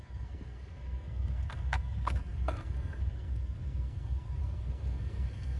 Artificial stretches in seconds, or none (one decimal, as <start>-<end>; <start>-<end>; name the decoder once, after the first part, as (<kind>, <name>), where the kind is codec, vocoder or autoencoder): 0.0-5.6 (codec, SNAC)